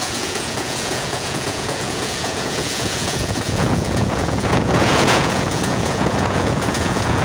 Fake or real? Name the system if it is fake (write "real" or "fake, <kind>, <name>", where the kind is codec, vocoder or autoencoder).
fake, vocoder, Vocos